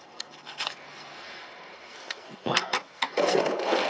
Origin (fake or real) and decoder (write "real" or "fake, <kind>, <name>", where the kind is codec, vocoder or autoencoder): fake, codec, SNAC